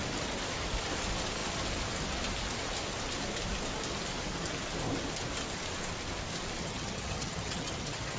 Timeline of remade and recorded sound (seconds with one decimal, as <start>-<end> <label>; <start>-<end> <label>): 0.0-6.6 recorded; 6.6-8.2 remade